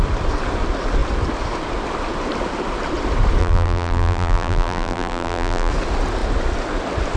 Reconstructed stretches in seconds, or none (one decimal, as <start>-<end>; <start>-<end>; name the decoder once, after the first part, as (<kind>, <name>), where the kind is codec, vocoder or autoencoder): 3.4-5.7 (vocoder, BigVGAN v2)